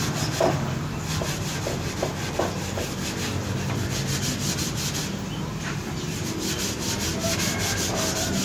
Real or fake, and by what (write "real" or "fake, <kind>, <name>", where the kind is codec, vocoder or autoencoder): real